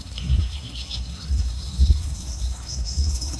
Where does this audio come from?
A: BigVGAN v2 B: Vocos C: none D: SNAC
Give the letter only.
D